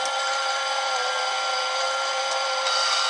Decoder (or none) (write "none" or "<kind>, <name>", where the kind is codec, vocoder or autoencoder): none